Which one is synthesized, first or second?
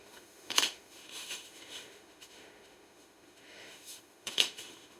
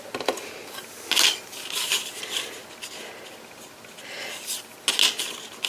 first